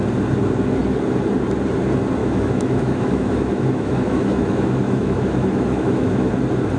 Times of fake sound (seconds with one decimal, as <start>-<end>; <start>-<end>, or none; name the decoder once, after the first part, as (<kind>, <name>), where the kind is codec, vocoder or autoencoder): 2.2-6.3 (autoencoder, DAC-VAE)